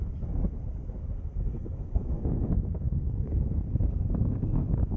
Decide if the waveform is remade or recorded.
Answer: remade